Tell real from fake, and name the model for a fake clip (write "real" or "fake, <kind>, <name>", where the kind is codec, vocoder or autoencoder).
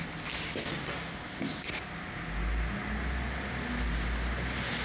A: real